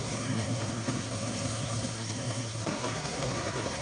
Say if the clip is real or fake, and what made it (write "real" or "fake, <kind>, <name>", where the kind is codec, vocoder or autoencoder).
fake, codec, SNAC